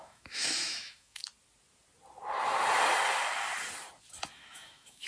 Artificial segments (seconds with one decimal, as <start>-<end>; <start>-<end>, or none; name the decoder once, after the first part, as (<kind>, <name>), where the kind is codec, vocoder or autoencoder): 0.0-1.2 (autoencoder, DAC-VAE); 4.3-5.1